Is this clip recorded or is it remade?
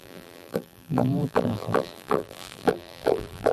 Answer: remade